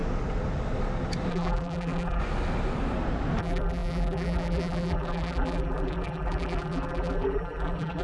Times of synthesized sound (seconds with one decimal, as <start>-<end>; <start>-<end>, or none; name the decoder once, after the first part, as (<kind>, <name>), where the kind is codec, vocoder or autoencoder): 1.3-2.2 (vocoder, BigVGAN v2); 3.4-8.0